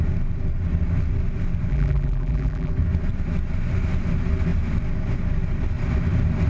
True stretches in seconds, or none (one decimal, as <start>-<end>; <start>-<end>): 0.0-1.7; 2.7-6.5